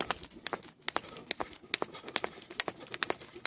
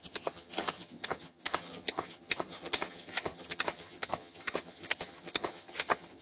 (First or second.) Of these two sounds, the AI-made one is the second